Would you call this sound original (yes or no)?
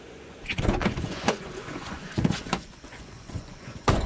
no